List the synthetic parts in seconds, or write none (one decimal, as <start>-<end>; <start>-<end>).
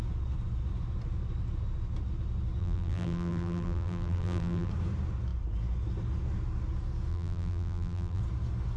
2.6-4.7; 7.1-8.2